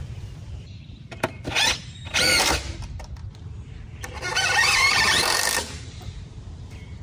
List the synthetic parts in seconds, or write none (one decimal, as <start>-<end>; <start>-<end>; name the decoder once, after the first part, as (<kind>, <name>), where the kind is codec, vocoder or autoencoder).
3.2-7.0 (vocoder, BigVGAN v2)